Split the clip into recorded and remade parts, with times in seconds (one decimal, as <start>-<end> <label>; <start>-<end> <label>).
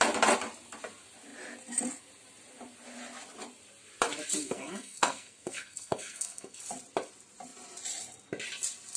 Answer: 0.0-4.4 recorded; 4.4-6.6 remade; 6.6-9.0 recorded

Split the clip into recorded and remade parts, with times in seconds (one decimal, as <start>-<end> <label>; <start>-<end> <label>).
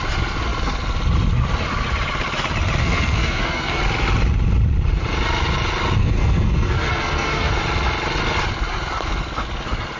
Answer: 0.0-2.8 recorded; 2.8-3.8 remade; 3.8-6.0 recorded; 6.0-7.5 remade; 7.5-10.0 recorded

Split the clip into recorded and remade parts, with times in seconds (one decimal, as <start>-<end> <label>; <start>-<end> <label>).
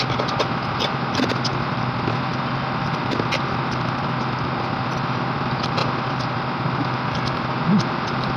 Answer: 0.0-8.4 recorded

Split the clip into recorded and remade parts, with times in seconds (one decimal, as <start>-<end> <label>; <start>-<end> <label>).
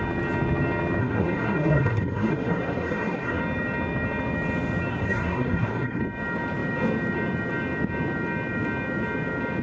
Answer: 0.0-1.0 recorded; 1.0-3.4 remade; 3.4-4.9 recorded; 4.9-6.0 remade; 6.0-9.6 recorded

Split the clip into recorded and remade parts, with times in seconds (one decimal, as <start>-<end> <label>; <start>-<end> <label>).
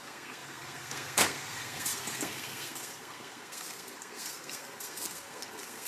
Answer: 0.0-5.9 remade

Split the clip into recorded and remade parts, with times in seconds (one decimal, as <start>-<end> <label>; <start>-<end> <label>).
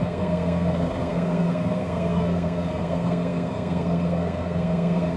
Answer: 0.0-5.2 remade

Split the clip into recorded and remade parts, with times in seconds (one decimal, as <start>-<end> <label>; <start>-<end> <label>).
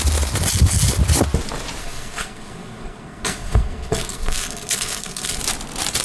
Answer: 0.0-1.8 recorded; 1.8-5.4 remade; 5.4-6.0 recorded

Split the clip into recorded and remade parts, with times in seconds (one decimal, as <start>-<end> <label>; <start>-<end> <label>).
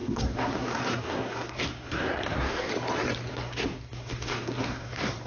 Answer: 0.0-2.7 remade; 2.7-3.3 recorded; 3.3-5.3 remade